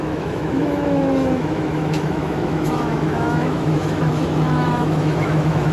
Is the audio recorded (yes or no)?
no